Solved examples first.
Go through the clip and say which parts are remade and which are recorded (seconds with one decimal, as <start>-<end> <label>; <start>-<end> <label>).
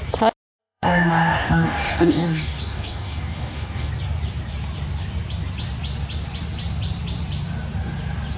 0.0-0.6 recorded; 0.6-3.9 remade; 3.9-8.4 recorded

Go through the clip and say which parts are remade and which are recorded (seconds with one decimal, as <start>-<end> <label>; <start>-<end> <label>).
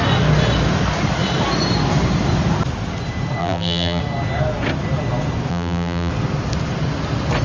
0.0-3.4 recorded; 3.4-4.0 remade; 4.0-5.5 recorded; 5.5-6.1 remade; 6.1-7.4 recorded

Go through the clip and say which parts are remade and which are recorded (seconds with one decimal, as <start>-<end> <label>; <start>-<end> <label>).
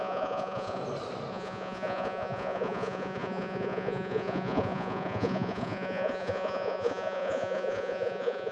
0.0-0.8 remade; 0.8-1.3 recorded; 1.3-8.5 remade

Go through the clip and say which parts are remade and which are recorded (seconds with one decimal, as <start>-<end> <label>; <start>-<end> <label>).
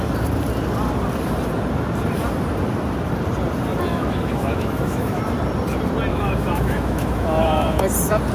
0.0-3.9 recorded; 3.9-5.2 remade; 5.2-6.1 recorded; 6.1-7.8 remade; 7.8-8.3 recorded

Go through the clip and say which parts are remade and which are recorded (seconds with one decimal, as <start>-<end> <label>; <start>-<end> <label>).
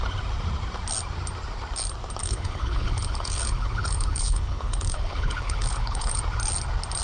0.0-2.2 recorded; 2.2-6.2 remade; 6.2-7.0 recorded